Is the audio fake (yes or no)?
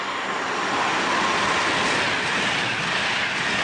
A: no